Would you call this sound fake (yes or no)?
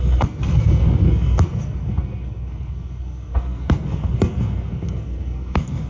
yes